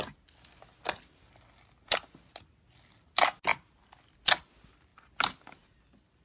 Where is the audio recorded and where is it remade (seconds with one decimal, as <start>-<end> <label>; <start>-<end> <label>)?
0.0-6.2 recorded